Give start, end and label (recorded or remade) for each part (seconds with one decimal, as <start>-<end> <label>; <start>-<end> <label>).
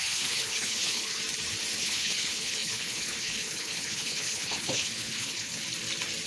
0.0-1.2 remade; 1.2-1.8 recorded; 1.8-5.6 remade; 5.6-6.3 recorded